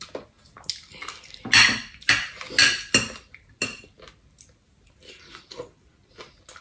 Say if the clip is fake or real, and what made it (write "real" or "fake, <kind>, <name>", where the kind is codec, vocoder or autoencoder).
real